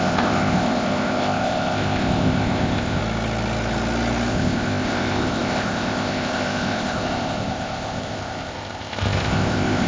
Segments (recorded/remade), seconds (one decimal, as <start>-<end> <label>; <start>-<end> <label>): 0.0-3.0 remade; 3.0-4.3 recorded; 4.3-9.9 remade